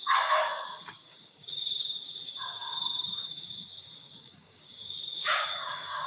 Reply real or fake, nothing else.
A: fake